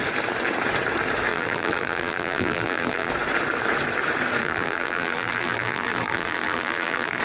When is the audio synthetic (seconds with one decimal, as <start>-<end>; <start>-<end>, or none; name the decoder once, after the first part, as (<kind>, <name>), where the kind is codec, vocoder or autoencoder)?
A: 1.3-3.1 (vocoder, BigVGAN v2); 4.4-7.2